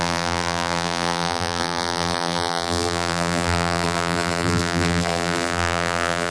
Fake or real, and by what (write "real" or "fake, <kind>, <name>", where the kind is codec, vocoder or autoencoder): fake, vocoder, BigVGAN v2